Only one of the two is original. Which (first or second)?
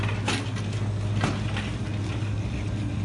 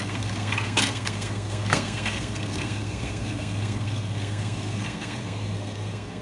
first